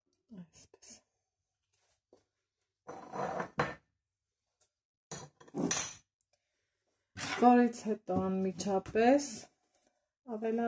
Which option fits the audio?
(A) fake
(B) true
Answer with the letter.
B